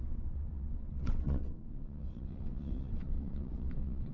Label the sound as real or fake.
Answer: fake